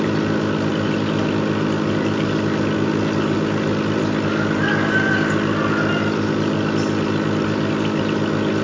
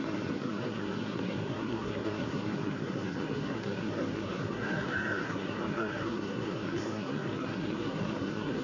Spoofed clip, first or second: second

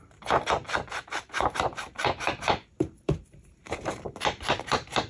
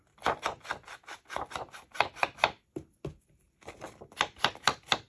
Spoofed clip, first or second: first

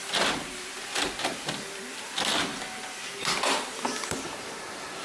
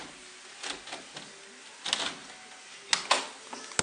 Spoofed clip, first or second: first